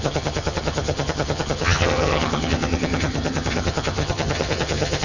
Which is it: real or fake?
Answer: fake